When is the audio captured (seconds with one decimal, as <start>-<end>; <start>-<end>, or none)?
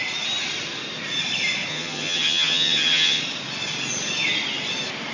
0.0-1.7; 3.2-5.1